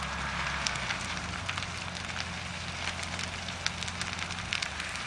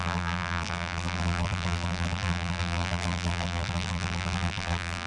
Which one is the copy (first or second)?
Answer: second